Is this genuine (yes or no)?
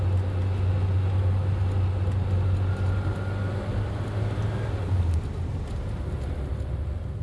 yes